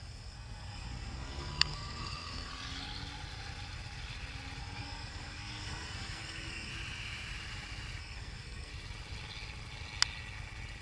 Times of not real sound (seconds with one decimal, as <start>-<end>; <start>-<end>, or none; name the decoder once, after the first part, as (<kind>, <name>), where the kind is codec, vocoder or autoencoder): 0.0-2.5 (codec, SNAC); 4.6-6.7; 8.0-8.7